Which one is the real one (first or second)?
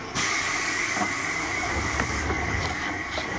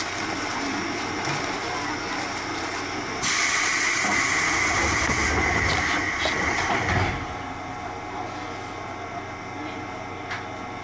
second